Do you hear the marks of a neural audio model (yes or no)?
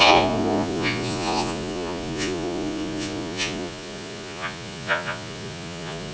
yes